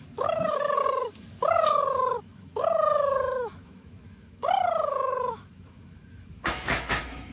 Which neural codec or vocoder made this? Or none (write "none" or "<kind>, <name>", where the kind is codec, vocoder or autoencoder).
autoencoder, DAC-VAE